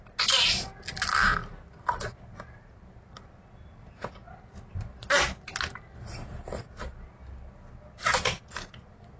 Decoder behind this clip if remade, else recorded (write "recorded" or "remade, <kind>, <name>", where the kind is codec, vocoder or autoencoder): recorded